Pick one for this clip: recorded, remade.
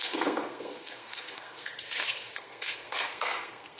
remade